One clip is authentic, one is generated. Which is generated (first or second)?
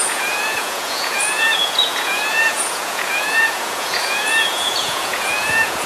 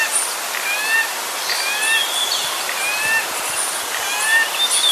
first